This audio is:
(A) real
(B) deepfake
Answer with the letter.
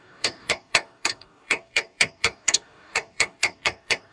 B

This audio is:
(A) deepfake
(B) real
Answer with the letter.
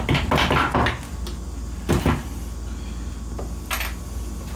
B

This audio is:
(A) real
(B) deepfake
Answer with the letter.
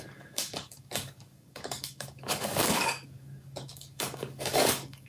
B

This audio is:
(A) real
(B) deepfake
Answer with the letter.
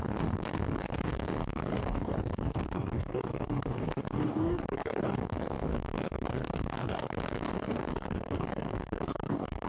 B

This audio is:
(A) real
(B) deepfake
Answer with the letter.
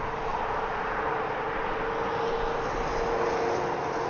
A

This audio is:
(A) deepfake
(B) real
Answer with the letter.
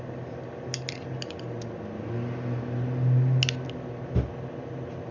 B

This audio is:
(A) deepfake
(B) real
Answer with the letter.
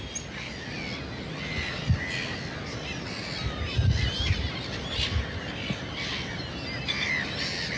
B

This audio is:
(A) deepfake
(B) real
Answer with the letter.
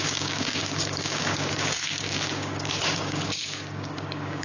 A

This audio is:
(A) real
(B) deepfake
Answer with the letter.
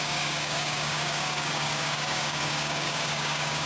B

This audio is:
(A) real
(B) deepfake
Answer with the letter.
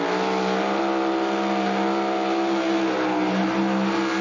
A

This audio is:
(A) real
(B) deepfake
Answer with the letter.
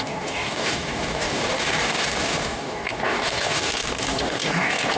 B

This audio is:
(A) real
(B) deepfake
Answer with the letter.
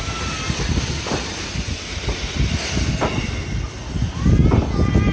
A